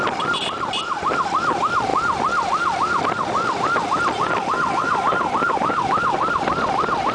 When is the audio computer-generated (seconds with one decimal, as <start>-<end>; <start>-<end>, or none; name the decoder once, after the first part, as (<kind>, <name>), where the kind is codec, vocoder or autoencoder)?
none

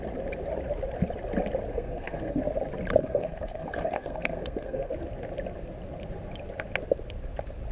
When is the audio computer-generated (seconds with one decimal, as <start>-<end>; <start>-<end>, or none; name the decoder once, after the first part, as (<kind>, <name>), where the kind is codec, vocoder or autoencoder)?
1.7-2.4 (codec, SNAC); 3.0-4.9

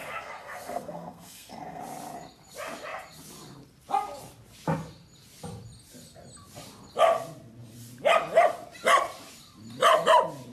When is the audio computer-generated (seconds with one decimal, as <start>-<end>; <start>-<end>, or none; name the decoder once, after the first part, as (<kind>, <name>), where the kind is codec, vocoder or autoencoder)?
0.0-1.8 (codec, SNAC)

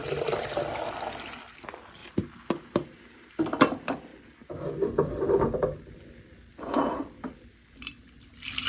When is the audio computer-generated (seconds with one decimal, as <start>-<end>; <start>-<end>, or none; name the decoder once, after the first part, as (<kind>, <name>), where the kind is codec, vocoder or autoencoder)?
0.0-0.6 (vocoder, BigVGAN v2); 2.0-3.4

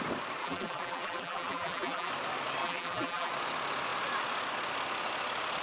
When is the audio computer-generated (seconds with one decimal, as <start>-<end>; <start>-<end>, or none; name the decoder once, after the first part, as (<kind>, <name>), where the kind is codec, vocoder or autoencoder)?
0.4-2.1 (vocoder, BigVGAN v2); 2.6-3.3